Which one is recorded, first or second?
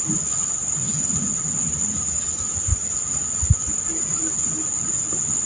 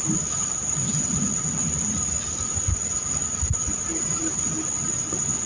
first